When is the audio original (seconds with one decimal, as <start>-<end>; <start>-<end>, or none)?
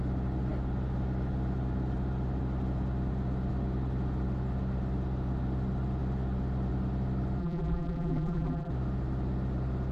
0.0-7.4; 8.7-9.9